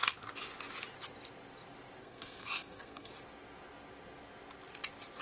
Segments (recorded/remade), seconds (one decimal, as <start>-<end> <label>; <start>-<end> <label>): 0.0-2.0 recorded; 2.0-3.1 remade; 3.1-5.2 recorded